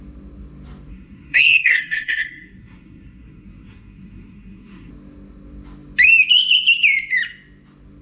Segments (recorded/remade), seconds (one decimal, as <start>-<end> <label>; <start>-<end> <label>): 0.0-0.9 recorded; 0.9-4.9 remade; 4.9-8.0 recorded